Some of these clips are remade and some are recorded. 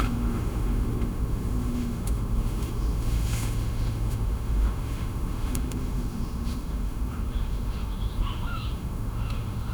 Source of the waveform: remade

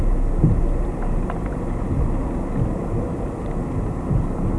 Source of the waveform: recorded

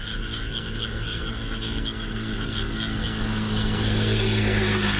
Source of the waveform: remade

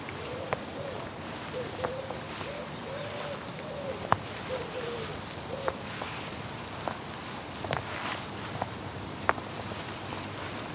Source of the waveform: remade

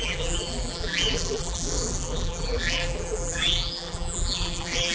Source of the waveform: remade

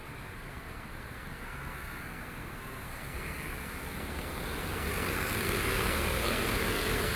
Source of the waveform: remade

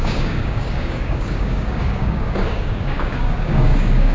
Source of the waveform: remade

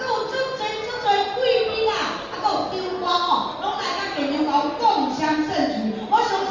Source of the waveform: recorded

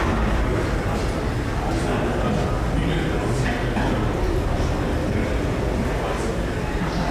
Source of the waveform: recorded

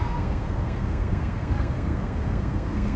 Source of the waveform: remade